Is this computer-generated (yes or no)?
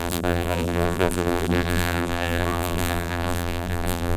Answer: yes